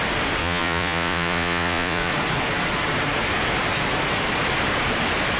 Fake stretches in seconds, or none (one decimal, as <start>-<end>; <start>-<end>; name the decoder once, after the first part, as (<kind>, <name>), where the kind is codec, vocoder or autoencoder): 0.4-2.1 (vocoder, Vocos)